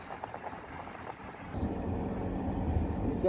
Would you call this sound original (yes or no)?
yes